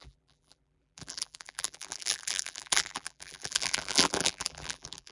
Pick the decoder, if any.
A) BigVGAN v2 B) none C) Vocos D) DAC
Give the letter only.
A